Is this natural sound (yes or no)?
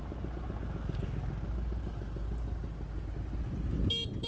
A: yes